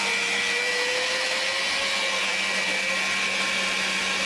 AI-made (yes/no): no